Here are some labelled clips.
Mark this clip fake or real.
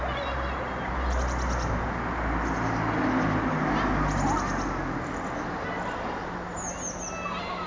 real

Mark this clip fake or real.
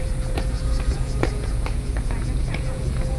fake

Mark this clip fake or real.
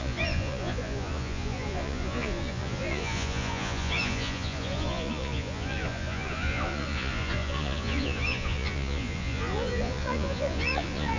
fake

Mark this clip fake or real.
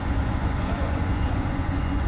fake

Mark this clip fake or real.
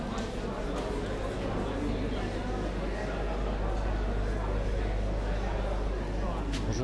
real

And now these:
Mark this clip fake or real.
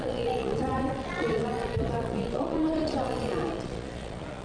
fake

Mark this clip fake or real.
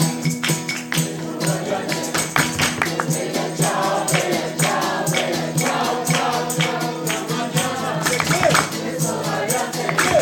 real